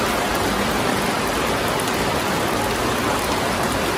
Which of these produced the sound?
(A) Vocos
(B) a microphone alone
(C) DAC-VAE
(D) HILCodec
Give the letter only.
B